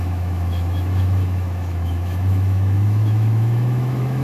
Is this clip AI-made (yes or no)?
yes